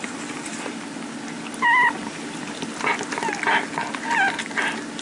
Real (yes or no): yes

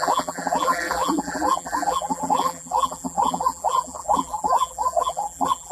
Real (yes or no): no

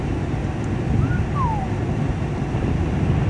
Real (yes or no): yes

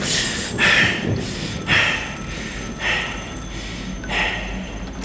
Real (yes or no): yes